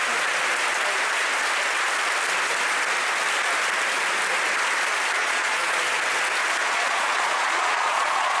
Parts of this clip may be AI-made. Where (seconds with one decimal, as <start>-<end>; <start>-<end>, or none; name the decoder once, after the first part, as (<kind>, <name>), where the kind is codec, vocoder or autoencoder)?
5.2-5.8 (vocoder, Vocos); 6.6-8.4